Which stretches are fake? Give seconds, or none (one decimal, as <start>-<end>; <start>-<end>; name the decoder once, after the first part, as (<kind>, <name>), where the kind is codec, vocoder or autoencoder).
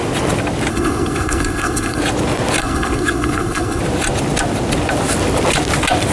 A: 0.7-2.0 (codec, SNAC); 2.6-3.8